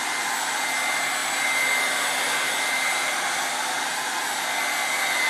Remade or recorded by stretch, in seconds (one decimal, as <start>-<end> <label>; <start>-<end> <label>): 0.0-5.3 recorded